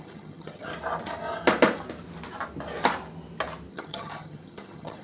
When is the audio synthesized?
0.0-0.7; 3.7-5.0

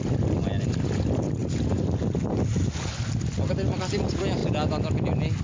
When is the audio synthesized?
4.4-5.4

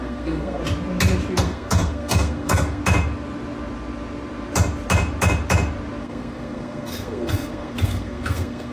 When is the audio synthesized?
0.0-0.6; 1.4-2.8; 6.0-8.7